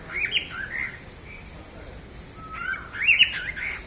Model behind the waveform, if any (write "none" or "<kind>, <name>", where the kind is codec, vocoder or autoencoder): none